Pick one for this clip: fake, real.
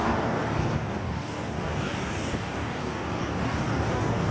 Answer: fake